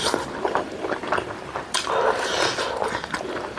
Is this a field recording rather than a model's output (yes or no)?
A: yes